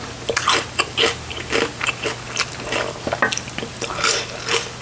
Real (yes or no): yes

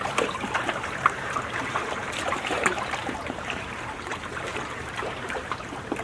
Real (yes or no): no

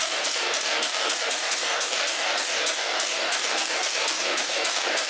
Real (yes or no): no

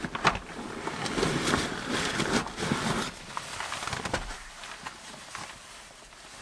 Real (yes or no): yes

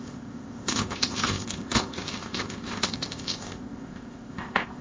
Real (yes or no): no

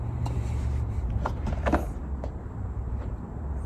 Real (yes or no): no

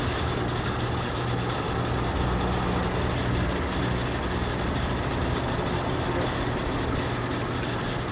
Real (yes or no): yes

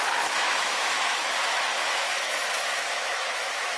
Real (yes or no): no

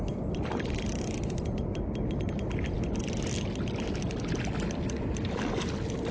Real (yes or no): yes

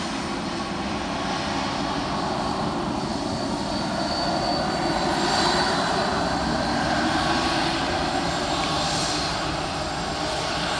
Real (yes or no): yes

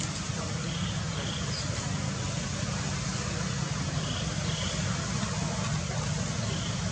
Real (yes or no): yes